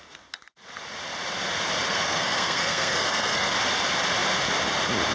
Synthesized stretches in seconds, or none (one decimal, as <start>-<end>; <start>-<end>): 1.9-3.5